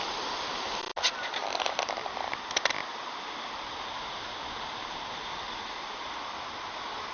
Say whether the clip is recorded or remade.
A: recorded